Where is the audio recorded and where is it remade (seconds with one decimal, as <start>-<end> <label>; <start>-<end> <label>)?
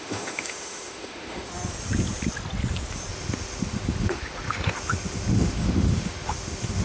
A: 0.0-1.5 remade; 1.5-3.1 recorded; 3.1-6.8 remade